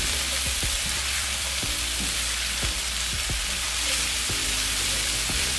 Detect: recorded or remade remade